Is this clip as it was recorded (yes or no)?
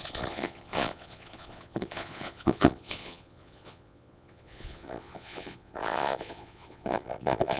no